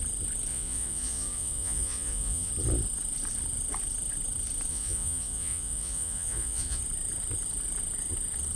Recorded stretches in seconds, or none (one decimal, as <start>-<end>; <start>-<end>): 0.0-0.5; 2.5-4.7; 6.8-8.6